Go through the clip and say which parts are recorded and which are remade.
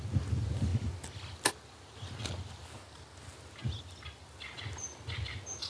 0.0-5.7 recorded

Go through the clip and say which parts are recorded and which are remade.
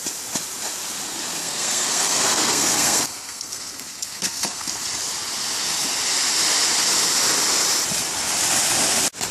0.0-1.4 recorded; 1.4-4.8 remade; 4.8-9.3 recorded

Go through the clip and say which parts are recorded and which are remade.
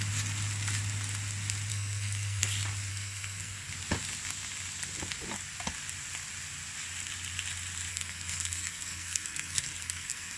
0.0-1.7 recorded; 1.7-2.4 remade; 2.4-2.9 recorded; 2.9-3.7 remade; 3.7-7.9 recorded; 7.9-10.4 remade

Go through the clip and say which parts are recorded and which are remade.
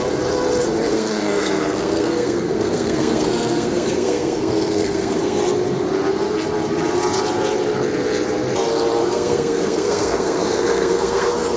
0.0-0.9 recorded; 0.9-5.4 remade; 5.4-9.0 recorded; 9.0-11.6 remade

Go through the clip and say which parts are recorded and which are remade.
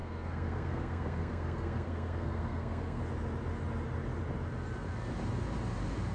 0.0-3.0 remade; 3.0-6.1 recorded